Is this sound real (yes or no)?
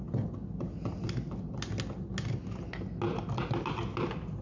yes